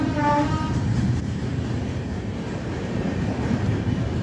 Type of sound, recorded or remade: remade